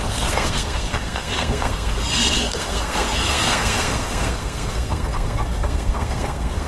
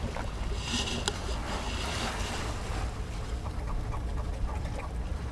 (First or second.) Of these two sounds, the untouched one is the second